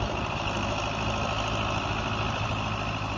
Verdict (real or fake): real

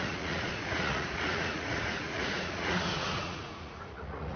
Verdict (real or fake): fake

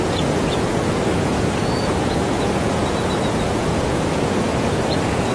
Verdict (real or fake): fake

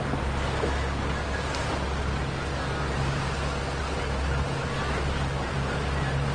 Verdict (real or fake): real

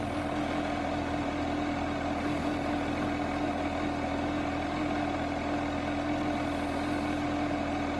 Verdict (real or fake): real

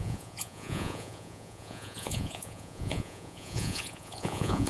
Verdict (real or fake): fake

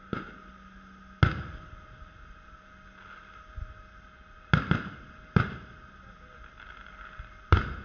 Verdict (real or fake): real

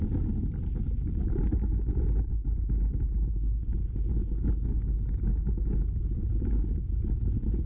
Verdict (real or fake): real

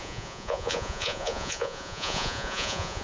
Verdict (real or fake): fake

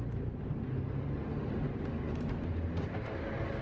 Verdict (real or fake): real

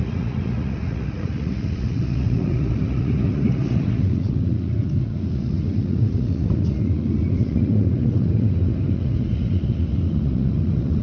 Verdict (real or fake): fake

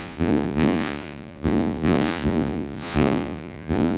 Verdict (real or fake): fake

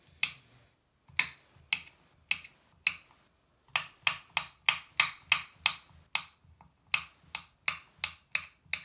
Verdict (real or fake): real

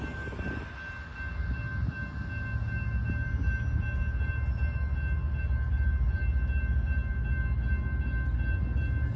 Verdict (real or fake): real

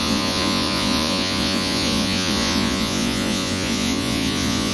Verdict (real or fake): fake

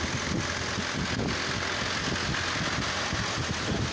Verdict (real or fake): real